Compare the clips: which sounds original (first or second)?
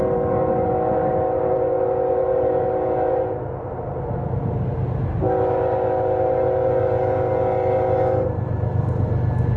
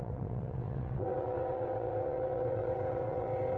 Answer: first